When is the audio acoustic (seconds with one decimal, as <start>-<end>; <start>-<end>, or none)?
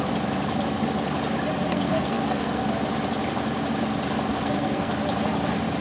0.0-1.7; 2.6-4.3; 4.9-5.8